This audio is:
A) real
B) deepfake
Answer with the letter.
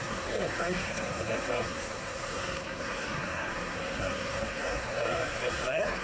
B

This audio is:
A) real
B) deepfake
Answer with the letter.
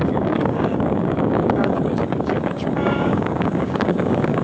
B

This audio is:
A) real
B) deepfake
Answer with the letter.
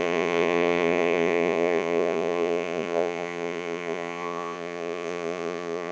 B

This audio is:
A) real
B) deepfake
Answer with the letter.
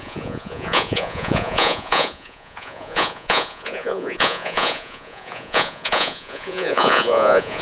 B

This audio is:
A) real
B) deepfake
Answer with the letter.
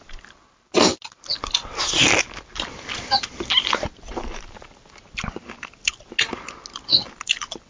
A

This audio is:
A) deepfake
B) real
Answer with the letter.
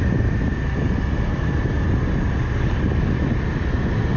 B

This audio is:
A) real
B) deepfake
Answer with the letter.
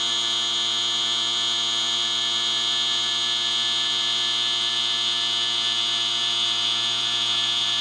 B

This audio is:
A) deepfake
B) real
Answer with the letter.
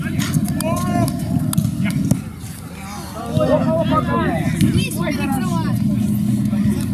B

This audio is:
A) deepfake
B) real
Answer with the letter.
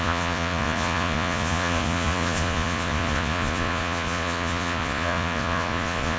A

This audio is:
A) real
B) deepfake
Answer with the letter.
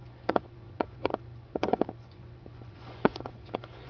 B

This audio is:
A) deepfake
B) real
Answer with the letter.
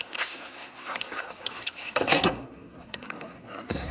A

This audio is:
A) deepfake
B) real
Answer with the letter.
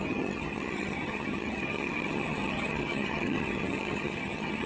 A